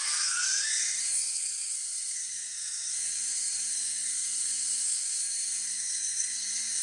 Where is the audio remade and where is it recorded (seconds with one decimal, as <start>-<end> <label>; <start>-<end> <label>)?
0.0-6.8 remade